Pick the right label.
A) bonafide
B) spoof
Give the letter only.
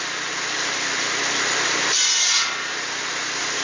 B